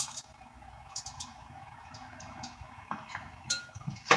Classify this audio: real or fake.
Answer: fake